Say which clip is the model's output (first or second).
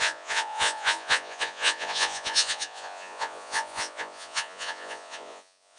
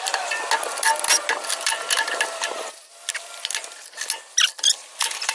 first